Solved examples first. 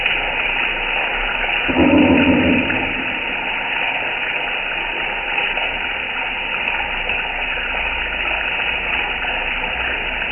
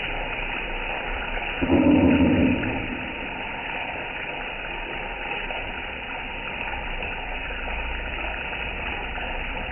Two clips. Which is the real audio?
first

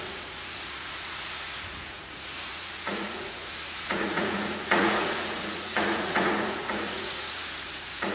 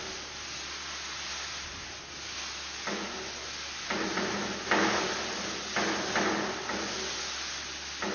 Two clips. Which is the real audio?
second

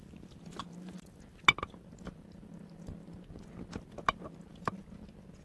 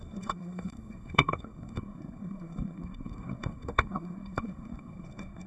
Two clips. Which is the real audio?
first